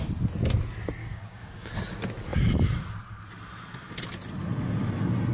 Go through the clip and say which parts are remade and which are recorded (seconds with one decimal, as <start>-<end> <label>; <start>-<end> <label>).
0.0-1.0 recorded; 1.0-1.7 remade; 1.7-5.3 recorded